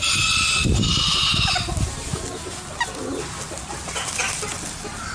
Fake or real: real